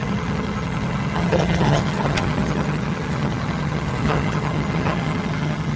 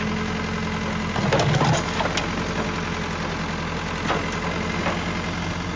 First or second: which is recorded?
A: second